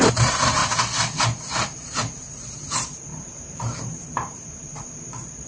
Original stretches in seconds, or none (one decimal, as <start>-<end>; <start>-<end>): 0.6-1.4